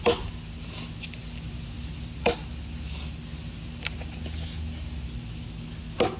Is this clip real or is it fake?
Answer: real